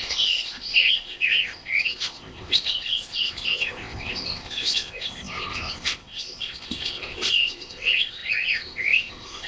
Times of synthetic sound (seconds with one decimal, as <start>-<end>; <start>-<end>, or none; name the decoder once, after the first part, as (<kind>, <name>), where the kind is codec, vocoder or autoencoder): 0.0-9.5 (codec, ZipCodec)